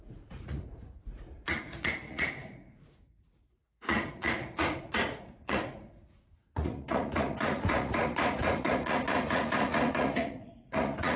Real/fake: fake